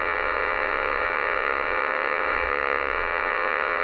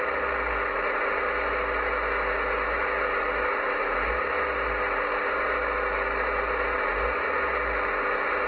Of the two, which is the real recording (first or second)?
second